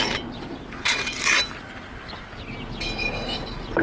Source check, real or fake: real